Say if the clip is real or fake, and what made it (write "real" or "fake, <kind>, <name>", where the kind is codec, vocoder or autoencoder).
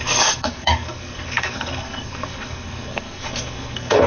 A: fake, codec, SNAC